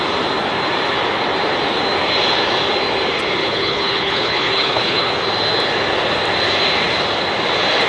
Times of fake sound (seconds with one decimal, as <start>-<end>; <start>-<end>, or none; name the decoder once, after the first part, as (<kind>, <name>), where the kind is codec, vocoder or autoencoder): 3.4-5.1 (codec, HILCodec)